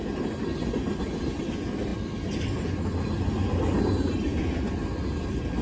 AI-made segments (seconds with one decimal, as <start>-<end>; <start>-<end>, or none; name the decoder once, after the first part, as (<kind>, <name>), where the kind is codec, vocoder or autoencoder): none